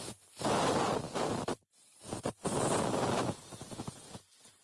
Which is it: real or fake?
real